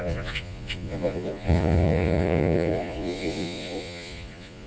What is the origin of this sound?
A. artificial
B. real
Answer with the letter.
A